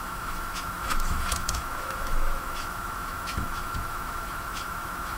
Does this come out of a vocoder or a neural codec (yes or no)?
yes